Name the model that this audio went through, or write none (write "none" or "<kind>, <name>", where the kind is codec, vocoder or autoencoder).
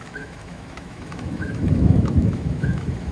autoencoder, DAC-VAE